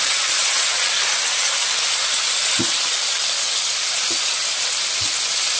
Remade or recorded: recorded